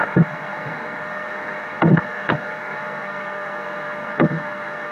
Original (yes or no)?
no